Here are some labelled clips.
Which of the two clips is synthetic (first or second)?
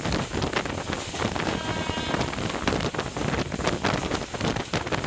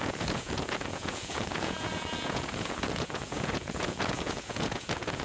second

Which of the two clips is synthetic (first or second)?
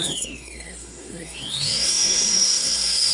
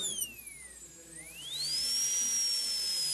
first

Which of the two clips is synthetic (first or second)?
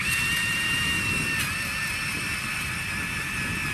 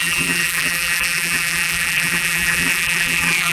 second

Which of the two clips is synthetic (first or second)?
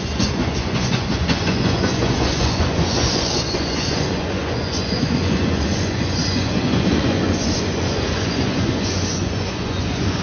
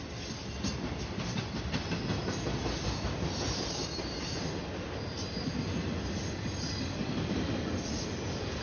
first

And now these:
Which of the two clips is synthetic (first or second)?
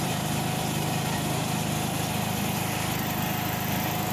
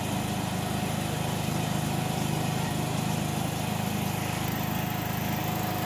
first